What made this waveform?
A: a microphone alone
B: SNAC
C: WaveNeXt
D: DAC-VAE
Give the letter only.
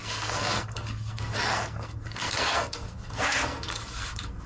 B